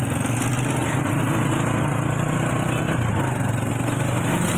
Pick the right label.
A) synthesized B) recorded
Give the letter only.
B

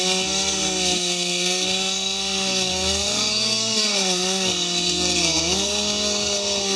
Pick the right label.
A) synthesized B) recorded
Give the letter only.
A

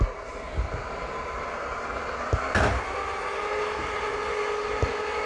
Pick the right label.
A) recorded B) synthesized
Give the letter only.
A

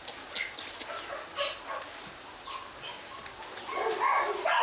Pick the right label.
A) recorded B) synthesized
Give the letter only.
A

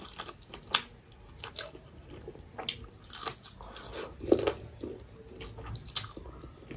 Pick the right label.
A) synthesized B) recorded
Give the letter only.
B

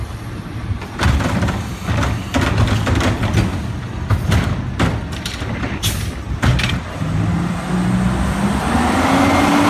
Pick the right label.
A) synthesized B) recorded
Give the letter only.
B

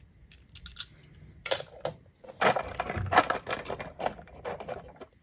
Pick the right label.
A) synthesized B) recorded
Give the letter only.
B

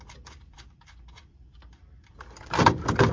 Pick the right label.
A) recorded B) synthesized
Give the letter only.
B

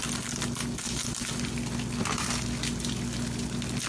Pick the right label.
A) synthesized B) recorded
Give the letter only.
B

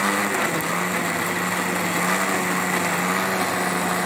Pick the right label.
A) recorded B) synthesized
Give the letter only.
A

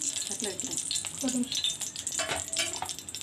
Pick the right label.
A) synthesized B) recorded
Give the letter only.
B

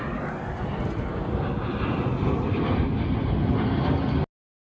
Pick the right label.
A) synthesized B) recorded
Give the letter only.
B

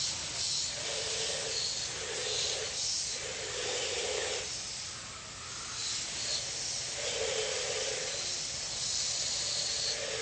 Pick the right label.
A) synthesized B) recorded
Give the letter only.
B